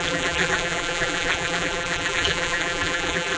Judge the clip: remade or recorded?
remade